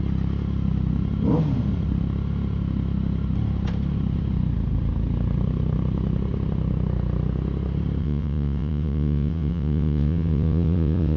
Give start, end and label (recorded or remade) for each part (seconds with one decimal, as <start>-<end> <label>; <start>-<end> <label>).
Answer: 0.0-8.0 recorded; 8.0-11.2 remade